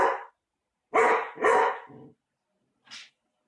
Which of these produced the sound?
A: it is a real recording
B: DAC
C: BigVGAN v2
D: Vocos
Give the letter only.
A